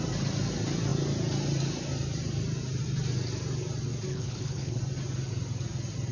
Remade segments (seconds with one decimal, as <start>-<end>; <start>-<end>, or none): 4.1-4.8